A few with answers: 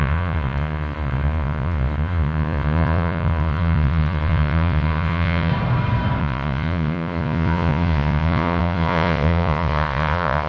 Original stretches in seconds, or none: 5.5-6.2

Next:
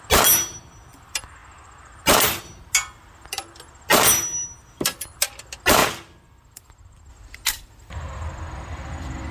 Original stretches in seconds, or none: 0.0-9.3

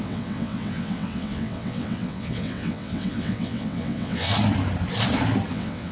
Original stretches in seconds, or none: 4.3-5.5